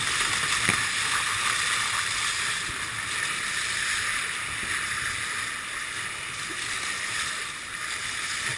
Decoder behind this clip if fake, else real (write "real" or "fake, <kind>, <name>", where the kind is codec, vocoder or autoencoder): real